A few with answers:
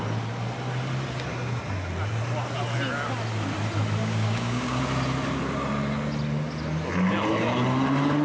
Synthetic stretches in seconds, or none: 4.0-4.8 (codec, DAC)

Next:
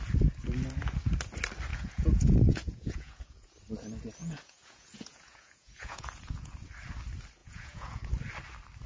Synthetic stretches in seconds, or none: 1.7-3.5 (vocoder, Vocos); 4.2-6.5; 7.4-8.1

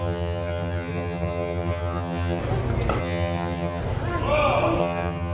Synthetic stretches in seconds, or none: 0.0-2.4 (vocoder, HiFi-GAN); 3.0-3.8; 4.8-5.3

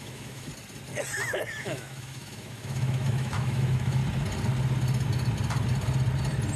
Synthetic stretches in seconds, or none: 0.0-0.5 (autoencoder, DAC-VAE); 1.6-4.0

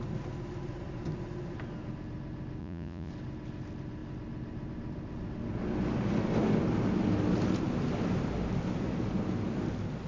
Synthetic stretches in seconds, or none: 2.6-3.1 (vocoder, Vocos)

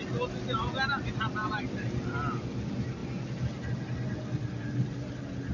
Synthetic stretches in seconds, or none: none

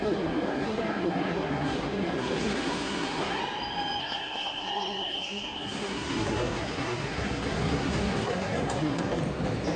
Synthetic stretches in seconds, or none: 0.0-3.4 (codec, SNAC); 4.0-9.2